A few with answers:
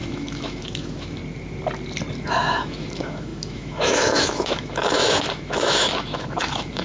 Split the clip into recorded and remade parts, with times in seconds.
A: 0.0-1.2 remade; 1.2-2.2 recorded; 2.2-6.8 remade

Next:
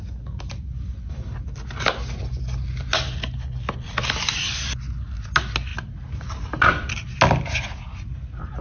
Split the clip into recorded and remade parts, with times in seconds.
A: 0.0-8.6 recorded

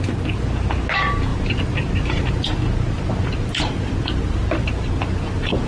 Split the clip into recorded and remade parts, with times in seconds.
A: 0.0-1.3 recorded; 1.3-4.7 remade; 4.7-5.7 recorded

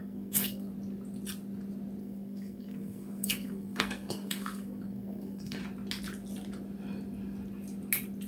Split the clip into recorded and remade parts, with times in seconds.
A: 0.0-0.7 remade; 0.7-2.0 recorded; 2.0-5.6 remade; 5.6-8.3 recorded

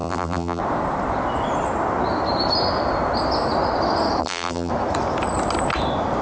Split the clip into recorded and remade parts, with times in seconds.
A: 0.0-0.6 remade; 0.6-4.2 recorded; 4.2-4.7 remade; 4.7-6.2 recorded

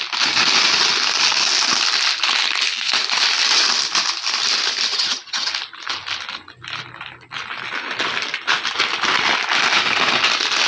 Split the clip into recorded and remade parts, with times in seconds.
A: 0.0-4.9 recorded; 4.9-5.5 remade; 5.5-10.7 recorded

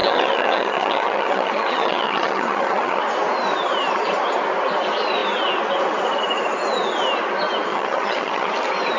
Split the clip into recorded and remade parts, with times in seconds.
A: 0.0-3.0 remade; 3.0-7.7 recorded; 7.7-8.5 remade; 8.5-9.0 recorded